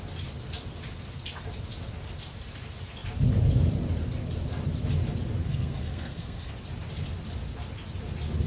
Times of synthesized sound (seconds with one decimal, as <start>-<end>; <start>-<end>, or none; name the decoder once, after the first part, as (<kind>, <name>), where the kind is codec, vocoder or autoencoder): 5.4-6.5 (codec, SNAC)